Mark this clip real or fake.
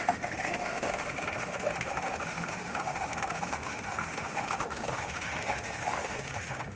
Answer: fake